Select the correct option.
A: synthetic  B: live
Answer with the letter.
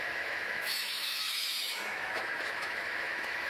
A